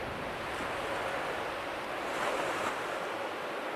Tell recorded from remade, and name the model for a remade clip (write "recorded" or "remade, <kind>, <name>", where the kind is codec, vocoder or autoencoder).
recorded